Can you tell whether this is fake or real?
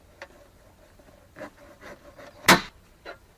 real